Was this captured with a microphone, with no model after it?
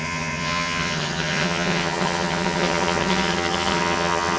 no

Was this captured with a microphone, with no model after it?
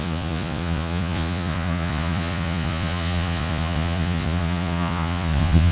no